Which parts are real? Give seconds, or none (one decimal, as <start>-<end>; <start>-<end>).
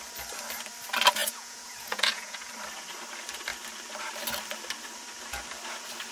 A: 0.0-1.2; 2.5-6.1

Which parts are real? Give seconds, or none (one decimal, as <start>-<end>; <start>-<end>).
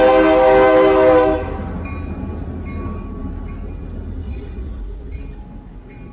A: 0.0-4.2; 5.2-6.1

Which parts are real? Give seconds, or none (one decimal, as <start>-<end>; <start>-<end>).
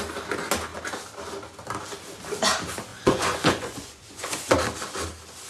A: 0.0-2.9; 4.5-5.5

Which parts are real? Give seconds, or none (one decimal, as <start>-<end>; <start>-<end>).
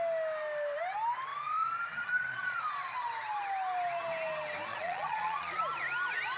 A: 0.0-1.3; 2.6-4.7; 5.6-6.4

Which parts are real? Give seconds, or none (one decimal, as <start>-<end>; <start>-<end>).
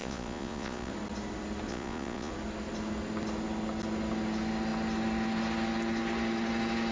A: 0.9-1.7; 2.3-6.9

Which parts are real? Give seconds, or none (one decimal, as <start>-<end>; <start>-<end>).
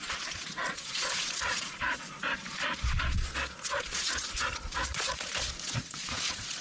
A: none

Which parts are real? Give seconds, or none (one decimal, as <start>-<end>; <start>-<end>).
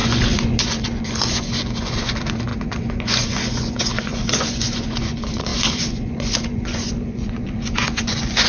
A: none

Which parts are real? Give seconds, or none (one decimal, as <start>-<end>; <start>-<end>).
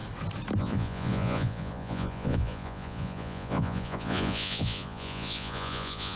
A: 0.0-0.6